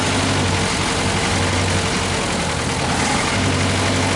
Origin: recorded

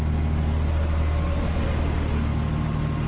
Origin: recorded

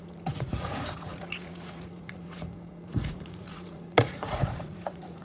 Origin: remade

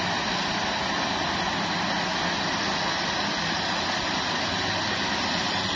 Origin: recorded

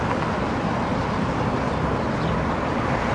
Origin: recorded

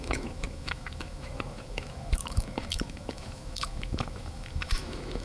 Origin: remade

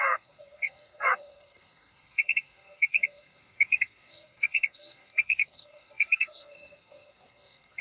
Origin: remade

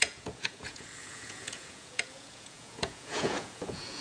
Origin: remade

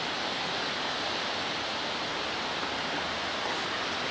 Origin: recorded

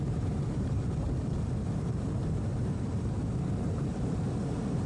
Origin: remade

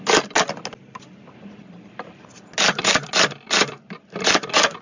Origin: recorded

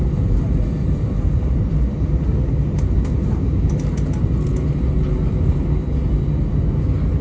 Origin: recorded